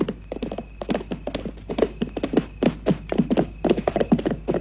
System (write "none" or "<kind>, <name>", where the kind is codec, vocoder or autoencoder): none